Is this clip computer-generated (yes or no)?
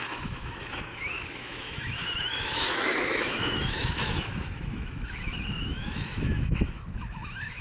yes